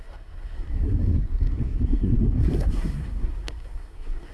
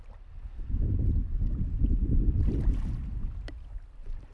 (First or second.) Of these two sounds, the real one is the second